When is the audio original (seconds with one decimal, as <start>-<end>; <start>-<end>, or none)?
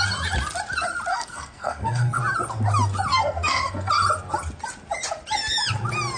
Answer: 0.0-1.1; 2.2-3.1; 3.9-6.2